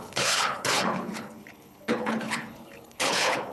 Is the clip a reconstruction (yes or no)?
yes